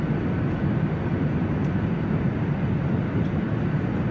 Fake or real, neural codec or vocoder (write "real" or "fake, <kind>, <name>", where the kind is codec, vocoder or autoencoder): real